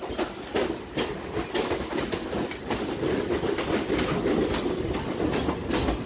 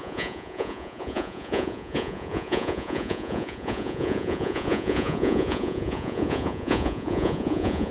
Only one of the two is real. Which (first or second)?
first